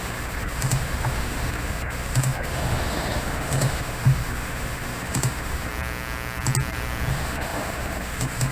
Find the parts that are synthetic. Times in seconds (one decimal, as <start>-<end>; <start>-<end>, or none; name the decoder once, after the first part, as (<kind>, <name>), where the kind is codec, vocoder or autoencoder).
0.0-5.7 (autoencoder, DAC-VAE); 7.1-8.5